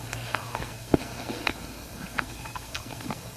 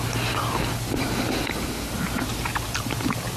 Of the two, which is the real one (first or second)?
second